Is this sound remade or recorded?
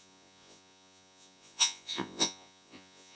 remade